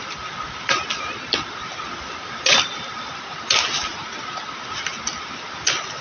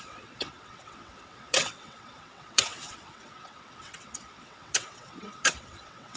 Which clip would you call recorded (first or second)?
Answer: first